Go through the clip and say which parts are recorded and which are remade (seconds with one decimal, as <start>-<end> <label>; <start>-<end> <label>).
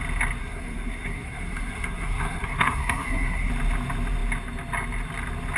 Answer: 0.0-0.4 recorded; 0.4-3.5 remade; 3.5-5.6 recorded